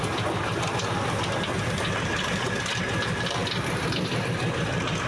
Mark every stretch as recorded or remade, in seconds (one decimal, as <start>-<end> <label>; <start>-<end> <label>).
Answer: 0.0-5.1 recorded